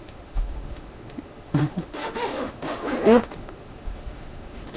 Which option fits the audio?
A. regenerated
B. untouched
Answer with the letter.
A